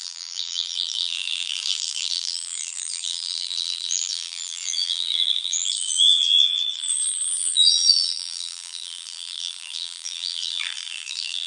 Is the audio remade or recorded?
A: remade